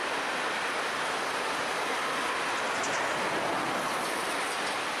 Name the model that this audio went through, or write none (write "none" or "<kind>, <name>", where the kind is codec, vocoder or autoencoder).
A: none